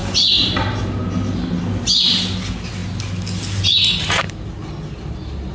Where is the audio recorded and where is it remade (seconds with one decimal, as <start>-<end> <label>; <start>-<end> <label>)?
0.0-5.5 recorded